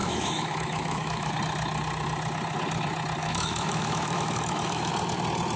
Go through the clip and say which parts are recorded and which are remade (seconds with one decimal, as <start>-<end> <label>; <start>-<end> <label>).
0.0-1.3 remade; 1.3-3.2 recorded; 3.2-4.9 remade; 4.9-5.6 recorded